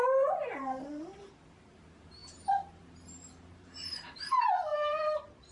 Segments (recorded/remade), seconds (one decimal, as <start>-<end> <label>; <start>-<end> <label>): 0.0-4.7 remade; 4.7-5.5 recorded